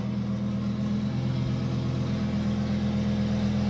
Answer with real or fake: real